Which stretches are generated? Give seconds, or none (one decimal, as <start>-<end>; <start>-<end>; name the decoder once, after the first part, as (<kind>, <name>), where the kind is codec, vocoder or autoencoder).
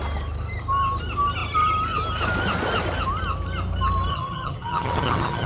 4.1-5.5 (vocoder, HiFi-GAN)